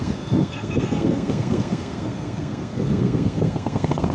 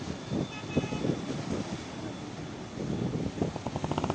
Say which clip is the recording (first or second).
second